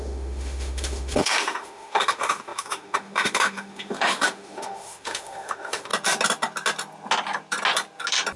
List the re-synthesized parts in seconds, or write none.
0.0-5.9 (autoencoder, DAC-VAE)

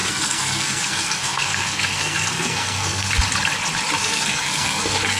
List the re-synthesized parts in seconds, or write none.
0.0-3.1 (codec, SNAC); 4.0-5.2

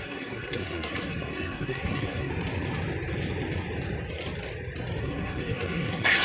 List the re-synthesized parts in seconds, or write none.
0.0-2.3 (codec, SNAC); 5.0-6.2

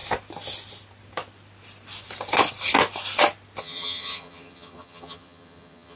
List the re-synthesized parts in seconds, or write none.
3.6-6.0 (vocoder, HiFi-GAN)

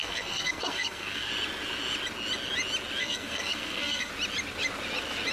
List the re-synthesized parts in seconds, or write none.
0.0-1.3 (codec, SNAC); 3.0-4.1

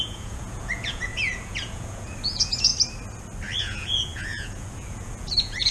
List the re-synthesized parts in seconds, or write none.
0.0-2.7 (vocoder, Vocos); 3.6-5.7